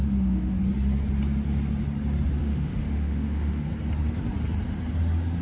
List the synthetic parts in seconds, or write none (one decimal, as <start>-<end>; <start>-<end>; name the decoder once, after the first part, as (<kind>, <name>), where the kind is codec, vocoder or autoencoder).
0.0-0.6 (autoencoder, DAC-VAE); 2.4-3.7